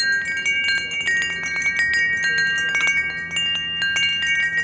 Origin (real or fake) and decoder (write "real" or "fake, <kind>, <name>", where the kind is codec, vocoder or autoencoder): real